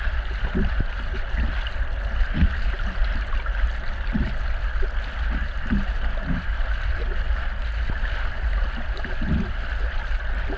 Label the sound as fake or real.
real